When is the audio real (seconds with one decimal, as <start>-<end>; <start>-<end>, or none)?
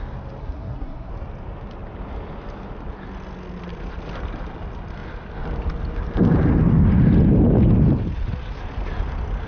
0.0-0.4; 1.1-9.5